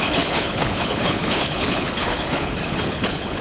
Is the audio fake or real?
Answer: fake